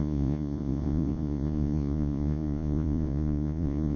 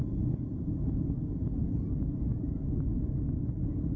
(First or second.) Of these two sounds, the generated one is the first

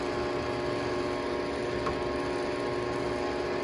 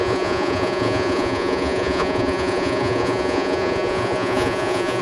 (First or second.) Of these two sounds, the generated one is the second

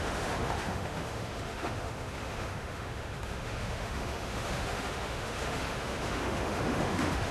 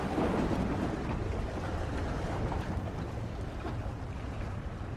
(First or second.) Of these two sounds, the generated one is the first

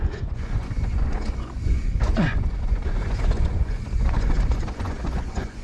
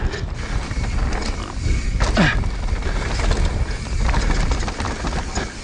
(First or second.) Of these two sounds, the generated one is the first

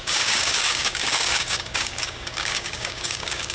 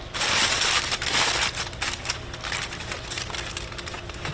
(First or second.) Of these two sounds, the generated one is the first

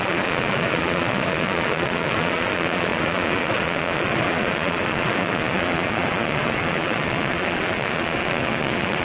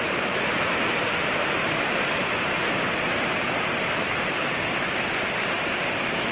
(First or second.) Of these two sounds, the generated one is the first